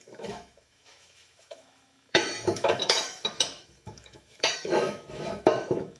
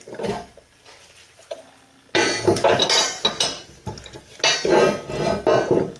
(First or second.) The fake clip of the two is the first